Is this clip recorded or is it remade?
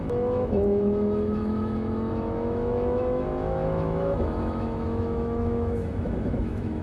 remade